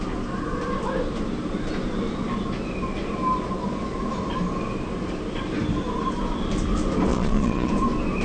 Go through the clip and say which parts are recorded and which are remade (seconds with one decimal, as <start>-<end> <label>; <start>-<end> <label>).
0.0-7.1 recorded; 7.1-7.7 remade; 7.7-8.2 recorded